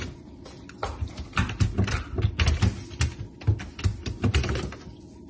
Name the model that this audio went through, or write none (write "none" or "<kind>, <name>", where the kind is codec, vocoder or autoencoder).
none